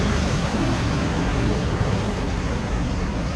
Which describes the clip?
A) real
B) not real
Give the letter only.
B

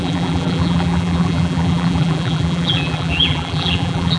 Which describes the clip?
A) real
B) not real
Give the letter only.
B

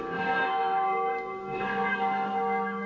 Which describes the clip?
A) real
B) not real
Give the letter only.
B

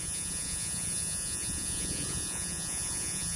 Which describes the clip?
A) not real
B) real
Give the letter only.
A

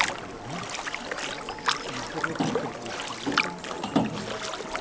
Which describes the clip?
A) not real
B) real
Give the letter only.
B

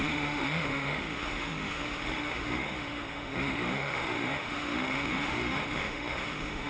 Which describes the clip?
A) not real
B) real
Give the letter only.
A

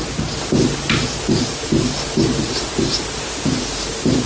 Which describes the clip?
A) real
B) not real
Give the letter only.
A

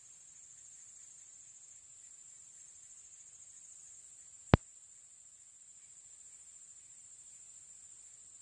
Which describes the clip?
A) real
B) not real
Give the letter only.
A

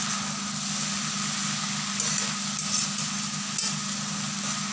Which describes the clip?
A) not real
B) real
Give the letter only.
B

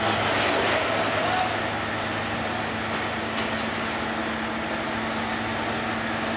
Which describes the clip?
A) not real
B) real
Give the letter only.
B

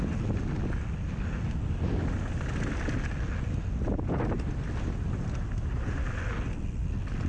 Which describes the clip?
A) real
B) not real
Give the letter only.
A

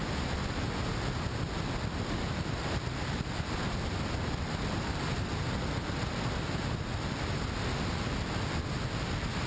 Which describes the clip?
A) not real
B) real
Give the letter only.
B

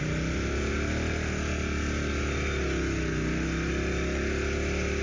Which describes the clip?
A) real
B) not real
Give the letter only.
A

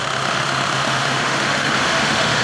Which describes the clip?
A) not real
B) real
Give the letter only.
A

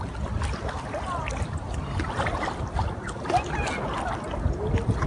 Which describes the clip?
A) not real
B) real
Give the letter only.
B